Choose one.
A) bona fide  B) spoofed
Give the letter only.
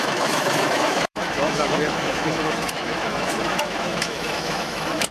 B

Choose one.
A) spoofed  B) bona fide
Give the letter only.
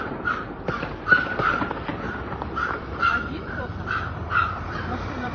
A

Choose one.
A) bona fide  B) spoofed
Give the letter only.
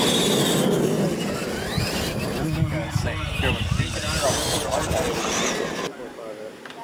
A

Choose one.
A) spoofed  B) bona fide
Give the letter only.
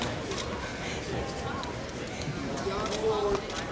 B